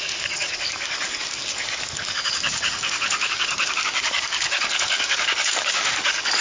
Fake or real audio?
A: fake